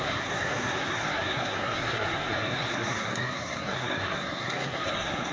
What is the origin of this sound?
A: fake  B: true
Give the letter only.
A